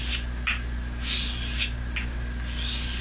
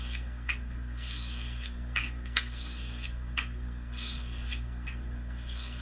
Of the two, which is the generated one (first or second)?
second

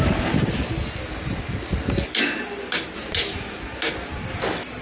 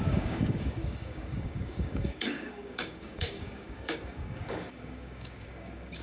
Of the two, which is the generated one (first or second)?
second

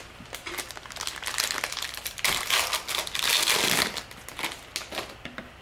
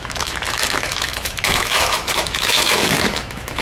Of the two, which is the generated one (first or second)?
second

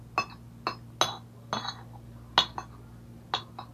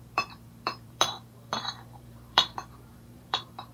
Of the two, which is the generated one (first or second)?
second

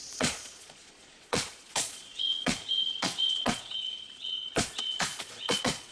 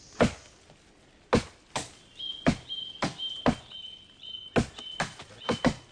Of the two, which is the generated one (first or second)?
first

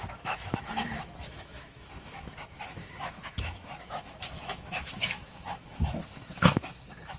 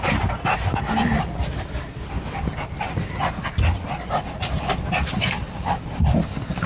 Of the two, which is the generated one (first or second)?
first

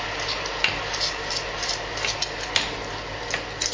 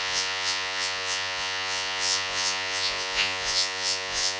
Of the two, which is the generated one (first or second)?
second